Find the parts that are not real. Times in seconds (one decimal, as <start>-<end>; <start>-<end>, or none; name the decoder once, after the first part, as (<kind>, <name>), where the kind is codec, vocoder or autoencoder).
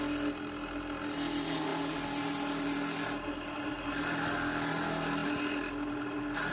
none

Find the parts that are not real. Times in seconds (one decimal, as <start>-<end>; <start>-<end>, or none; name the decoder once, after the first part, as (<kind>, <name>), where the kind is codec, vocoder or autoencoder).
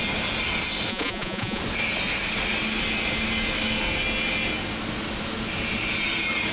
0.9-1.6 (vocoder, Vocos)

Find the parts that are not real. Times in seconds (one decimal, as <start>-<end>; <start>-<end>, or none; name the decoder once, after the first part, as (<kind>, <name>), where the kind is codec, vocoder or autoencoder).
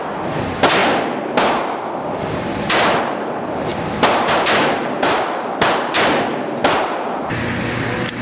none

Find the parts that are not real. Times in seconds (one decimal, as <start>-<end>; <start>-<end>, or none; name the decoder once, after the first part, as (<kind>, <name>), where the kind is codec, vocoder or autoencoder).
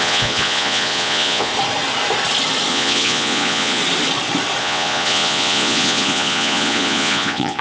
0.0-1.5 (vocoder, Vocos); 2.7-3.8; 4.6-7.6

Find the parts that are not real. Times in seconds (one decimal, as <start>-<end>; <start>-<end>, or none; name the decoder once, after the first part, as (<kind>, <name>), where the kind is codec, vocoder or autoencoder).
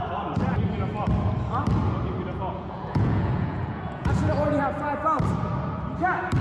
2.3-4.5 (vocoder, Vocos)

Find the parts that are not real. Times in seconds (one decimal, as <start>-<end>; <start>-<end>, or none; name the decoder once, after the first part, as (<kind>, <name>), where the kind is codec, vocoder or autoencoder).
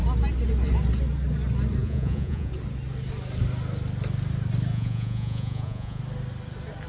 1.8-2.5 (vocoder, Vocos); 4.7-6.0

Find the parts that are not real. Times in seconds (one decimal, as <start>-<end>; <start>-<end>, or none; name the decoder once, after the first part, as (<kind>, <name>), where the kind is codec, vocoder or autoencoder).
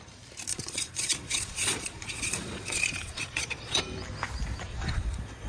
0.5-3.8 (vocoder, Vocos); 4.7-5.5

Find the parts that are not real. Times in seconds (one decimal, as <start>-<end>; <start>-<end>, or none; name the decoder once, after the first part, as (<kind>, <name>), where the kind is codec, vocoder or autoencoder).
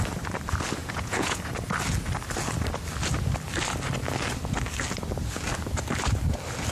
0.8-1.4 (vocoder, Vocos)